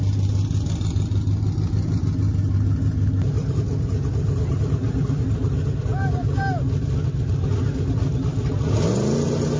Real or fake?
real